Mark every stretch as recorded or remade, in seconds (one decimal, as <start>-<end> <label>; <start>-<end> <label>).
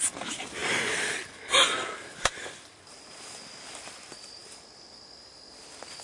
0.0-0.6 recorded; 0.6-2.8 remade; 2.8-4.4 recorded; 4.4-5.2 remade; 5.2-6.0 recorded